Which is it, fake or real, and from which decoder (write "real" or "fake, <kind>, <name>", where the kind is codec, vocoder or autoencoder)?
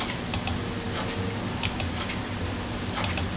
real